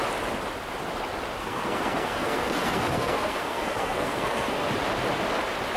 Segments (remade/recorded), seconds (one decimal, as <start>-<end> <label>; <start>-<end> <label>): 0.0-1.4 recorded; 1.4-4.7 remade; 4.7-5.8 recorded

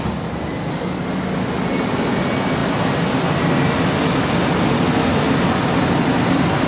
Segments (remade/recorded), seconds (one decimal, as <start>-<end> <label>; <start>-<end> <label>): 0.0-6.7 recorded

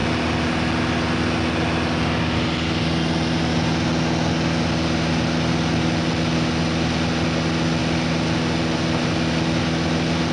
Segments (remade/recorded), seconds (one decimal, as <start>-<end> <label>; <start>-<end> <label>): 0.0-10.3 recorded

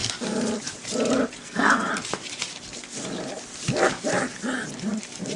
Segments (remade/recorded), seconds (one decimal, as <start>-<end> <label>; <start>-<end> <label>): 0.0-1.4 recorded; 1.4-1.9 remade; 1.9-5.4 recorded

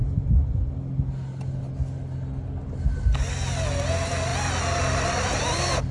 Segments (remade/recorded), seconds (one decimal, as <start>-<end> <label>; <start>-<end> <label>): 0.0-5.9 recorded

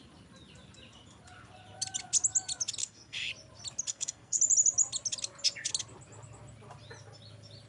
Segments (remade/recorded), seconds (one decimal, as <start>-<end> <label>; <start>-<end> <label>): 0.0-2.8 recorded; 2.8-3.3 remade; 3.3-3.9 recorded; 3.9-4.4 remade; 4.4-7.7 recorded

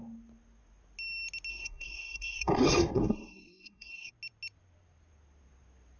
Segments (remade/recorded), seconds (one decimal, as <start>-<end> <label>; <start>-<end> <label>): 0.0-1.5 recorded; 1.5-4.1 remade; 4.1-6.0 recorded

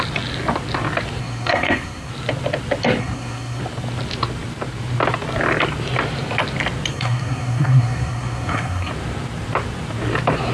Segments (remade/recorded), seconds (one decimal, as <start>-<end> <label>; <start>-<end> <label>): 0.0-1.2 recorded; 1.2-2.1 remade; 2.1-3.0 recorded; 3.0-3.6 remade; 3.6-6.9 recorded; 6.9-8.9 remade; 8.9-10.5 recorded